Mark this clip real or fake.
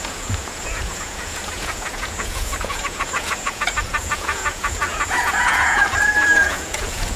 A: fake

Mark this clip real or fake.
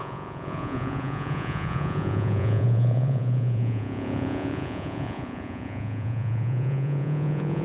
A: fake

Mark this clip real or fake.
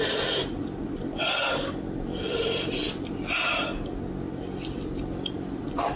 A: real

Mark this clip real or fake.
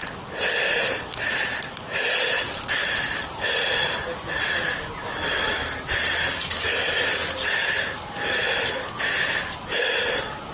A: real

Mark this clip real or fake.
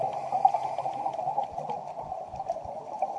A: real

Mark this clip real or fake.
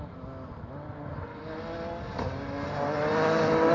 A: real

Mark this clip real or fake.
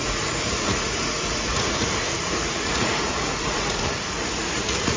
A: fake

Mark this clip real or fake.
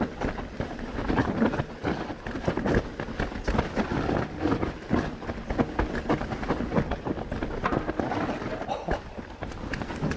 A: real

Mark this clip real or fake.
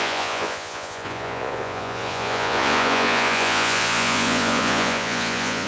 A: fake